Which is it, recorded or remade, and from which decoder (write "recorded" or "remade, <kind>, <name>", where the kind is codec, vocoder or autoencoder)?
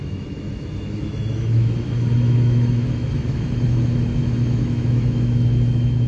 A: remade, autoencoder, DAC-VAE